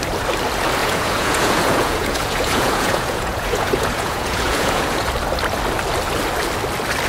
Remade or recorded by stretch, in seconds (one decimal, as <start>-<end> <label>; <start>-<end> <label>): 0.0-0.8 recorded; 0.8-5.1 remade; 5.1-7.1 recorded